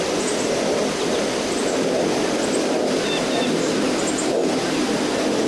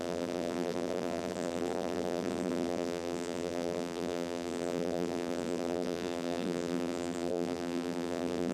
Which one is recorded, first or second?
first